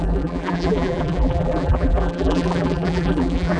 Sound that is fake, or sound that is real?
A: fake